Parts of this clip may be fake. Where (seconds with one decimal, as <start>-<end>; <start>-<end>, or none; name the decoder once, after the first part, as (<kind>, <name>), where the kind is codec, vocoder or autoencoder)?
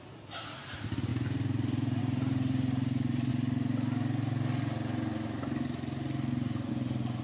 0.0-3.3 (vocoder, BigVGAN v2); 6.7-7.2